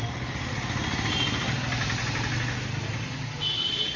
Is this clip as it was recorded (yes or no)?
yes